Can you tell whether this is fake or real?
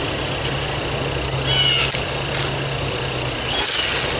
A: real